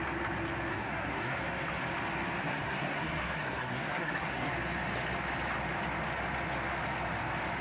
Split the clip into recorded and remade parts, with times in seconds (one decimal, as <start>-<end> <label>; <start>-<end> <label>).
0.0-0.7 recorded; 0.7-1.4 remade; 1.4-2.4 recorded; 2.4-4.5 remade; 4.5-7.6 recorded